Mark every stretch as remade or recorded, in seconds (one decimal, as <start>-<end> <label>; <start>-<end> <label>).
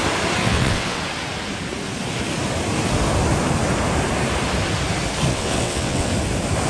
0.0-0.4 recorded; 0.4-1.0 remade; 1.0-5.3 recorded; 5.3-6.1 remade; 6.1-6.7 recorded